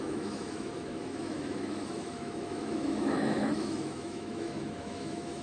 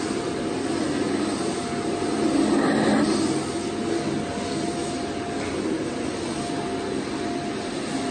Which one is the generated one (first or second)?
first